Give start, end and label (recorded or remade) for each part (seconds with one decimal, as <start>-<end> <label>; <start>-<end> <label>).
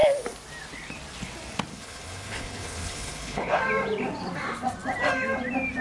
0.0-1.7 recorded; 1.7-3.6 remade; 3.6-5.8 recorded